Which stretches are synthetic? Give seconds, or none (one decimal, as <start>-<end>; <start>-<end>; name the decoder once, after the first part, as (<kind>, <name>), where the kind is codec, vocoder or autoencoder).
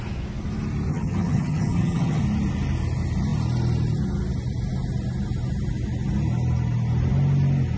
0.9-2.2 (vocoder, HiFi-GAN)